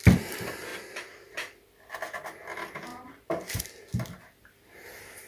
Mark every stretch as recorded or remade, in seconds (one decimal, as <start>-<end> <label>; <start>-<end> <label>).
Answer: 0.0-2.9 recorded; 2.9-3.6 remade; 3.6-5.3 recorded